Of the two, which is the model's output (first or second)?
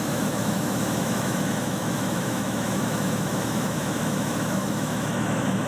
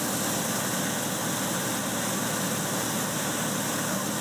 first